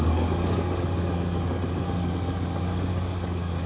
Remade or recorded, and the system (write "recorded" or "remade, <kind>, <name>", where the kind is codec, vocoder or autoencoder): remade, codec, DAC